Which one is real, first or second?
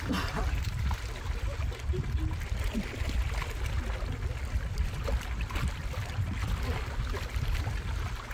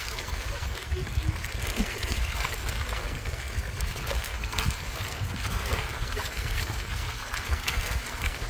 first